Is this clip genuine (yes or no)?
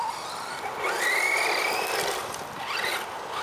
yes